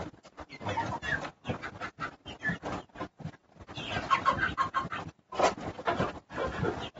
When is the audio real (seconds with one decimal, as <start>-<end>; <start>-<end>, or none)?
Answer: 0.0-7.0